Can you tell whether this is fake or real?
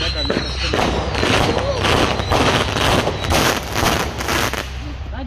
real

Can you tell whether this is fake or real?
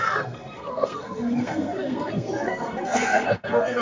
fake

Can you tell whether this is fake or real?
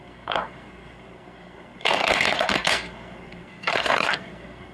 fake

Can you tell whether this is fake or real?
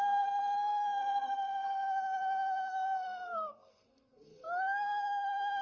fake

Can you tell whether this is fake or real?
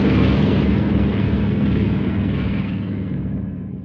fake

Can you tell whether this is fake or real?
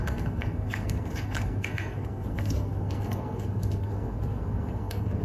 fake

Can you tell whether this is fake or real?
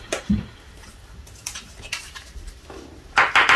real